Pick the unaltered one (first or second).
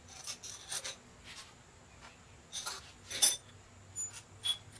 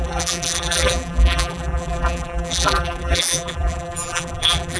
first